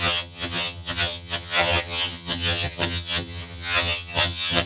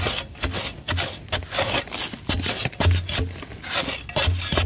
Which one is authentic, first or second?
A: second